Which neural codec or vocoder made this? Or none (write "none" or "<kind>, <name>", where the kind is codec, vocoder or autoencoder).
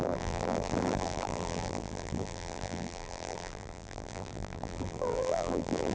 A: vocoder, BigVGAN v2